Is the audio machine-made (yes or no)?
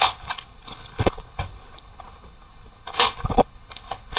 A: yes